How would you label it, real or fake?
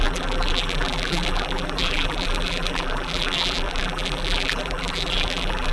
fake